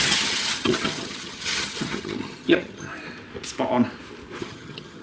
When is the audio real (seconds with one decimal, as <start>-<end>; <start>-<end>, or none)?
2.9-4.4